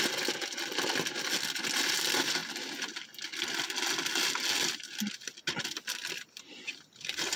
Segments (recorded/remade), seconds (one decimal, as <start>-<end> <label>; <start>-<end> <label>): 0.0-7.4 recorded